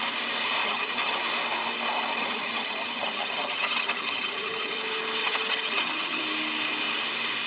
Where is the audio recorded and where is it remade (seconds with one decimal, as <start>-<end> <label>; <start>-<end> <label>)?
0.0-0.6 recorded; 0.6-1.2 remade; 1.2-2.1 recorded; 2.1-4.8 remade; 4.8-5.2 recorded; 5.2-6.2 remade; 6.2-7.5 recorded